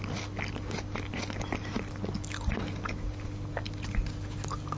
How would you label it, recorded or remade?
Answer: recorded